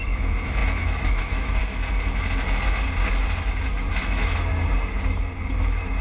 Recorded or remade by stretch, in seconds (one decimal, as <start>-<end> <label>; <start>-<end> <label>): 0.0-1.6 remade; 1.6-3.9 recorded; 3.9-4.5 remade; 4.5-5.5 recorded; 5.5-6.0 remade